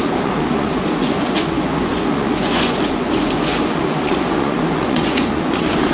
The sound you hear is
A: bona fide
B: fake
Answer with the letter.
B